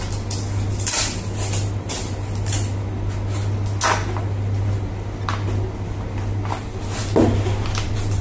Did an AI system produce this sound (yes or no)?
no